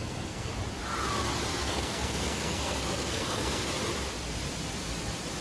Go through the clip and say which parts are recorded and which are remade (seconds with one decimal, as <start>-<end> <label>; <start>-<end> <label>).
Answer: 0.0-0.5 remade; 0.5-1.5 recorded; 1.5-3.7 remade; 3.7-5.4 recorded